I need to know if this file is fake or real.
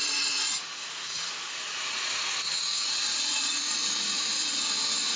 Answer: fake